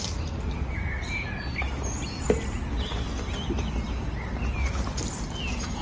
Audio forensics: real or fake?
real